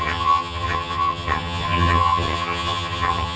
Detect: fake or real fake